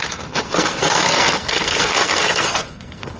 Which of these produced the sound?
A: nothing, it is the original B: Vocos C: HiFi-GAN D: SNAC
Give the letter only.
D